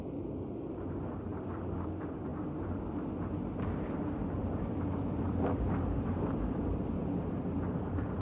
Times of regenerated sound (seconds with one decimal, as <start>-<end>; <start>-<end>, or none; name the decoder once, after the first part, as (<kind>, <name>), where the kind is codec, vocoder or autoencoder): 0.0-8.2 (vocoder, BigVGAN v2)